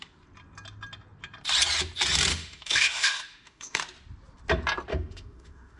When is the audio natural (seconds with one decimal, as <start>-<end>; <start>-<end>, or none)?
0.0-2.3; 3.8-4.9